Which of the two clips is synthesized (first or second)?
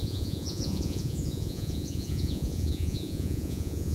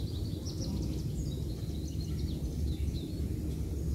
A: first